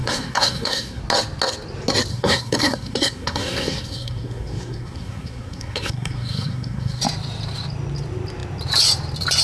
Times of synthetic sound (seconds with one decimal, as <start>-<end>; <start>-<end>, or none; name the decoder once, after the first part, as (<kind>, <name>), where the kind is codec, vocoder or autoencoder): 0.0-1.0 (codec, SNAC); 2.1-7.0

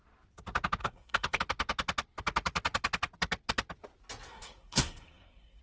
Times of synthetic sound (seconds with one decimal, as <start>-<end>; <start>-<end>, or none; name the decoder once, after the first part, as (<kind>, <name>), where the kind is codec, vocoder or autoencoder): 0.8-1.4 (codec, SNAC); 4.3-5.6

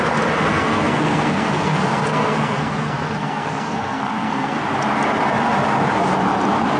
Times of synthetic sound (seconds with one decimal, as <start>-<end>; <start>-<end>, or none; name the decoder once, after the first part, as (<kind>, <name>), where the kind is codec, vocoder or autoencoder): 0.5-4.6 (codec, SNAC)

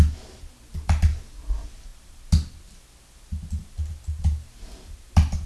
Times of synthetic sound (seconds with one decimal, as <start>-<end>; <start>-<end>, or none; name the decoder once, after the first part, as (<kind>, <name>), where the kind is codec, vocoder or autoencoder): none

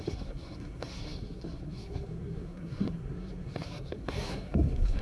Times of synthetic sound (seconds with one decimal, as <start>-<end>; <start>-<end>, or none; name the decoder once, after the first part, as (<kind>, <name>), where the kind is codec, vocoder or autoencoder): 0.0-5.0 (codec, SNAC)